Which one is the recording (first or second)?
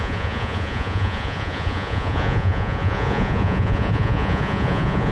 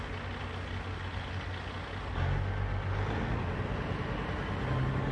second